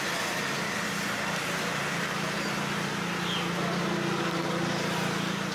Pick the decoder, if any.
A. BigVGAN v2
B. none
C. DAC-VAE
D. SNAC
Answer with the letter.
B